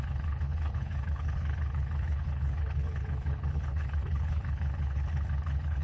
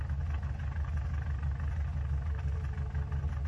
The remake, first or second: first